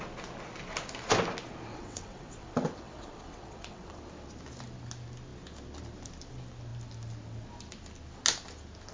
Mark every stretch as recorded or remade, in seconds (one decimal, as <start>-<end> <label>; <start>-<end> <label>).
0.0-1.7 recorded; 1.7-4.0 remade; 4.0-8.9 recorded